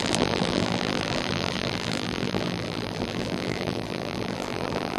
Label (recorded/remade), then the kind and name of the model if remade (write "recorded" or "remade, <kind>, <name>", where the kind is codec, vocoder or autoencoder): remade, vocoder, BigVGAN v2